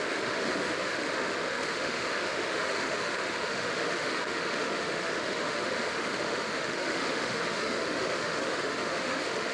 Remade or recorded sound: remade